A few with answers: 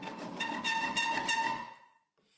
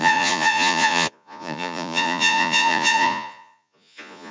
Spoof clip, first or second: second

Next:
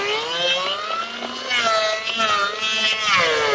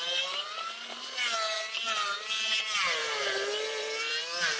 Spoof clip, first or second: second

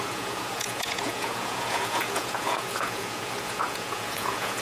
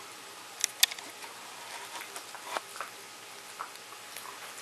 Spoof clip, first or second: first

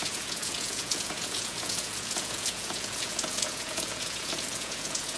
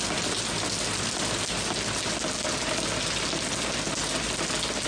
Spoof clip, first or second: first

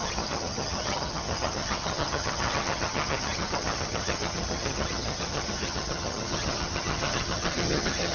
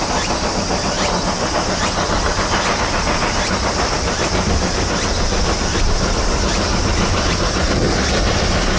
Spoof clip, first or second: first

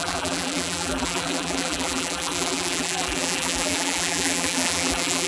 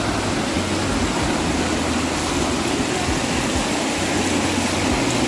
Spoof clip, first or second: first